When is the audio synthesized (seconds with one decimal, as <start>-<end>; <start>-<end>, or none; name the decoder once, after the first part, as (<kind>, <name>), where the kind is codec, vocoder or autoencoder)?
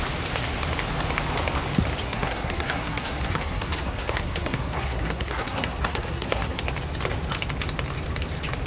2.0-6.6 (codec, SNAC)